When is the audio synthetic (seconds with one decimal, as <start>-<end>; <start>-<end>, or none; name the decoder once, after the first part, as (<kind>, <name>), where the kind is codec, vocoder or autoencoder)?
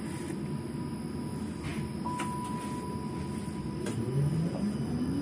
none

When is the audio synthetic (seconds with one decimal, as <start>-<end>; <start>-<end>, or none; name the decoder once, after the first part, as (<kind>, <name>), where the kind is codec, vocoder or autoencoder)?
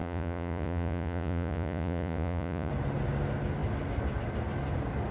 0.0-2.7 (vocoder, Vocos)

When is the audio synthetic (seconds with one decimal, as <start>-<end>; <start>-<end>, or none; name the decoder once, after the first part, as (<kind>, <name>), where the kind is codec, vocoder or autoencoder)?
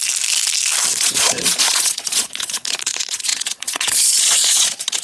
1.0-5.0 (vocoder, Vocos)